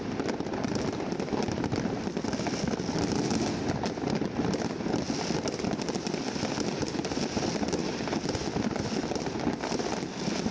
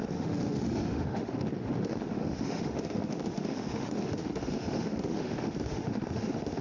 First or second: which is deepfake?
second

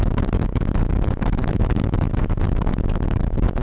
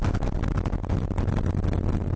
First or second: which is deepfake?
first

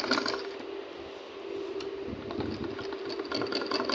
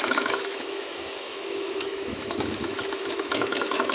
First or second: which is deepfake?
second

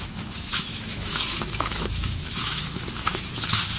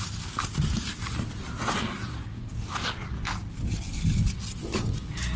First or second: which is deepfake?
first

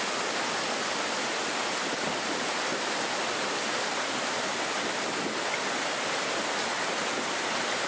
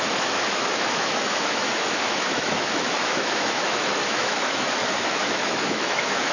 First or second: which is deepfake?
second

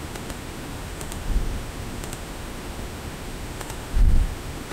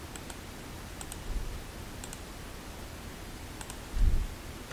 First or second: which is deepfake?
first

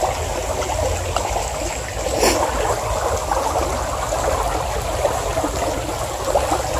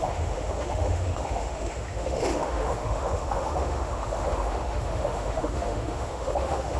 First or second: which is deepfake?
second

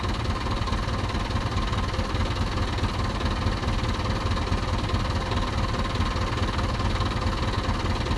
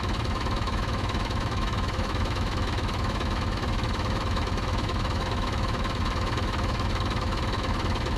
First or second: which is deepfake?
second